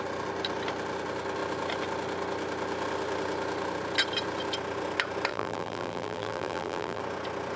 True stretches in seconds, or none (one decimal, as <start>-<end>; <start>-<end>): 0.0-5.3; 7.0-7.6